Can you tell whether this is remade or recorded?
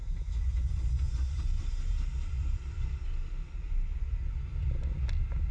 recorded